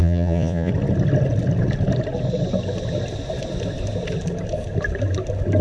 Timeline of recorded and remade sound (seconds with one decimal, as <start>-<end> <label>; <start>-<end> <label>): 0.0-0.7 remade; 0.7-5.6 recorded